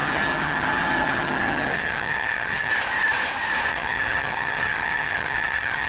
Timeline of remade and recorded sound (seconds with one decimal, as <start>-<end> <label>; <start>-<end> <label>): 0.0-2.7 remade; 2.7-3.7 recorded; 3.7-5.9 remade